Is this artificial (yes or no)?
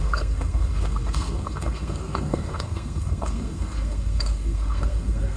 yes